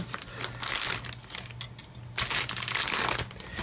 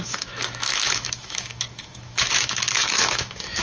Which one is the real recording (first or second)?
first